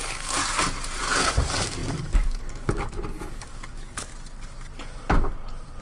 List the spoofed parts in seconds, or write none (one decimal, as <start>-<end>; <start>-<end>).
0.0-0.4; 1.0-4.1